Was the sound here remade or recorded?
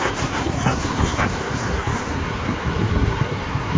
remade